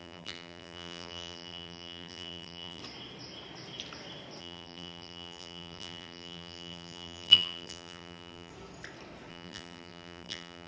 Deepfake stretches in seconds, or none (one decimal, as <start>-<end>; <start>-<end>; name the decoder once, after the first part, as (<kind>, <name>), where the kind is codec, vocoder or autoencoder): 0.0-2.8 (vocoder, BigVGAN v2); 4.4-8.5; 9.3-10.7